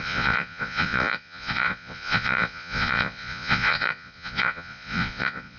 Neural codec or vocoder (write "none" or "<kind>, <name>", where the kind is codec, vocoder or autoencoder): vocoder, Vocos